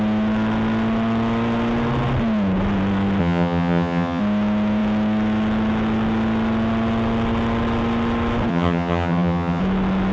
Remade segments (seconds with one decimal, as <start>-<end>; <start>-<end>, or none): 3.2-4.2; 8.5-9.6

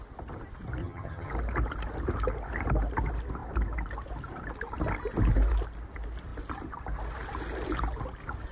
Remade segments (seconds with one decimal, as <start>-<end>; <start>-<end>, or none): 0.8-1.3

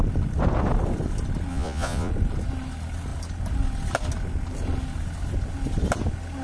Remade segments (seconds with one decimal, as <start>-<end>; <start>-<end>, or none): 1.5-2.1

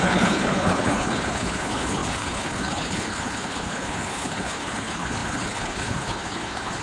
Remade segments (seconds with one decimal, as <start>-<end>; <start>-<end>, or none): 0.0-6.8